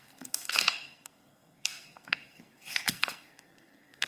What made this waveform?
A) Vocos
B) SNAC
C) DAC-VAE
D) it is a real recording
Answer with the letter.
B